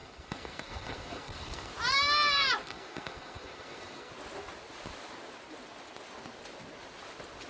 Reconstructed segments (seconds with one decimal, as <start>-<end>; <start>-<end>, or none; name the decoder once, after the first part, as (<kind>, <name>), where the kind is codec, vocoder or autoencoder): 0.0-1.7 (codec, SNAC); 2.6-4.1